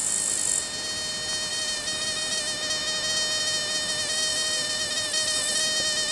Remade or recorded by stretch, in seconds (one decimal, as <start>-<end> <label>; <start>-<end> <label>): 0.0-1.5 recorded; 1.5-2.4 remade; 2.4-4.3 recorded; 4.3-5.6 remade; 5.6-6.1 recorded